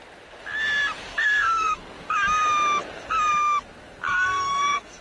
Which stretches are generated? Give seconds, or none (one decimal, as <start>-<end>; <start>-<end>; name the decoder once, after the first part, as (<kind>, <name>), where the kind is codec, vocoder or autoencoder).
1.1-1.8 (codec, SNAC); 4.1-5.0